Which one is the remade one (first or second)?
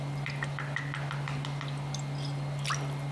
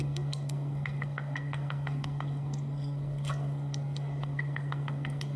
second